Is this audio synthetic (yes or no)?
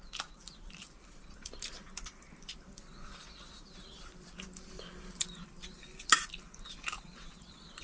yes